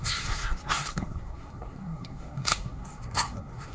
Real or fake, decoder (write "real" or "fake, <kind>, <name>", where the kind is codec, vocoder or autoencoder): fake, codec, SNAC